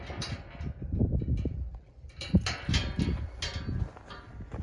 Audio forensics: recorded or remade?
recorded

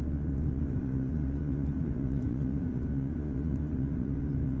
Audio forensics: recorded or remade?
remade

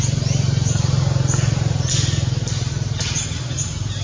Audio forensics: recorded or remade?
recorded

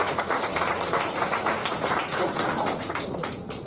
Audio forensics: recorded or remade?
remade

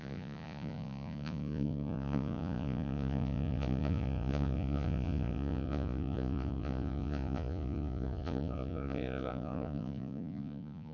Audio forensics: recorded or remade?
remade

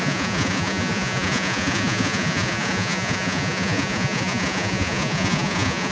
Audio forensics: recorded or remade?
remade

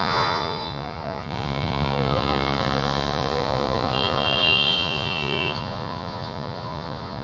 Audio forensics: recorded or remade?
remade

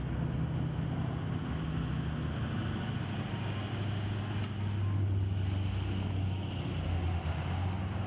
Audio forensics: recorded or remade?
recorded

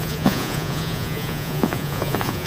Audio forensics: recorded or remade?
remade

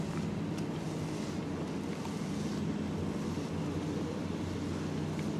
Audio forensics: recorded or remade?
recorded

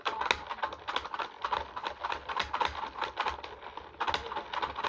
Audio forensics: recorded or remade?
recorded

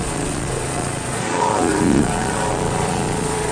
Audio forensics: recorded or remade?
remade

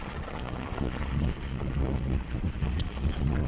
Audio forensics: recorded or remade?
remade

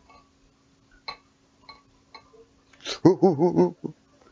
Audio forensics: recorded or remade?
recorded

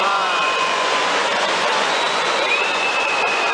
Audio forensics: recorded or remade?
remade